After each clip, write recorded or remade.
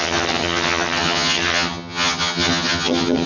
remade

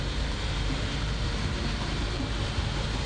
remade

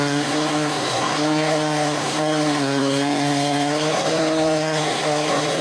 remade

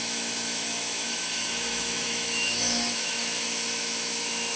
remade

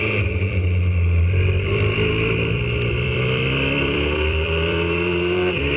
remade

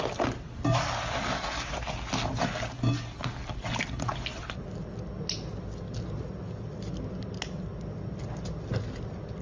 recorded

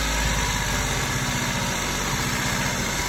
recorded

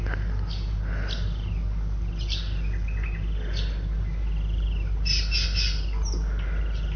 recorded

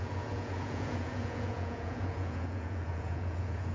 remade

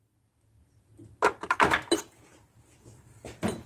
recorded